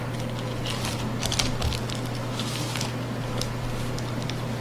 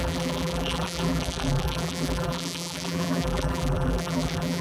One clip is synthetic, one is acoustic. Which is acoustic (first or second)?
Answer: first